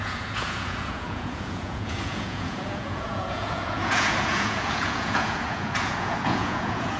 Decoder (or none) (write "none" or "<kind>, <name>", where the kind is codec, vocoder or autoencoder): vocoder, Vocos